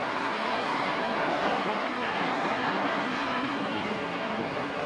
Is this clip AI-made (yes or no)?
yes